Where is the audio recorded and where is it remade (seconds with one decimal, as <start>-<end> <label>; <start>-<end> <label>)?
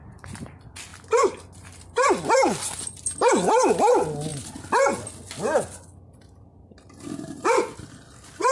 0.0-8.5 recorded